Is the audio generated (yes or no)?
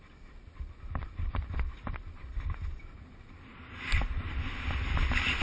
no